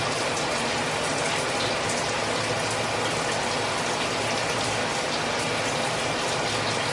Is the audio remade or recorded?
recorded